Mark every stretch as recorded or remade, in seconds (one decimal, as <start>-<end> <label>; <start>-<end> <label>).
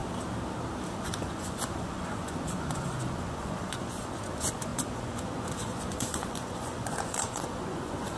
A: 0.0-0.9 recorded; 0.9-8.2 remade